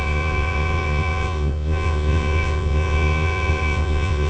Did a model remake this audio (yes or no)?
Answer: yes